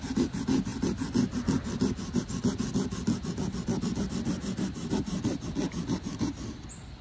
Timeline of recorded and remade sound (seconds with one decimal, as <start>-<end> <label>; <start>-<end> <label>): 0.0-7.0 recorded